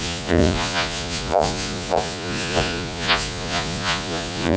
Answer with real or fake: fake